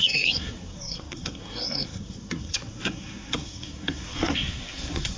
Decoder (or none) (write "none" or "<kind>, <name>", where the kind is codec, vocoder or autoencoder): codec, SNAC